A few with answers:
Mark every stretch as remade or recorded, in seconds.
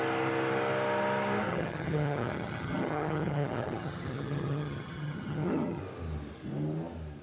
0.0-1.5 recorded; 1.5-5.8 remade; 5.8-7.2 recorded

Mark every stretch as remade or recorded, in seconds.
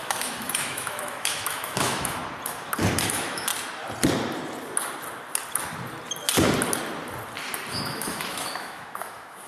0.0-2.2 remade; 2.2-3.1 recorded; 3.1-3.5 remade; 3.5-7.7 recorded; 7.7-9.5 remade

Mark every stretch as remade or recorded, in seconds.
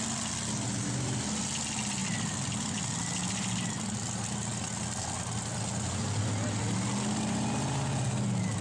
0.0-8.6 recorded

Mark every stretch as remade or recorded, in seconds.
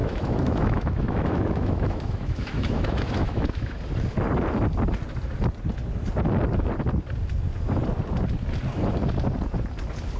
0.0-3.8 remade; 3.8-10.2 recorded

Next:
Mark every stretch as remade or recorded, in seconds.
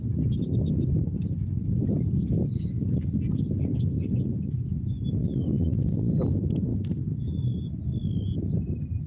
0.0-5.2 recorded; 5.2-6.1 remade; 6.1-9.1 recorded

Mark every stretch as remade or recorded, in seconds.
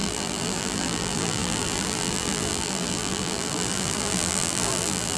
0.0-5.2 remade